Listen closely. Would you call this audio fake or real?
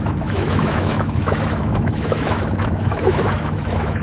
fake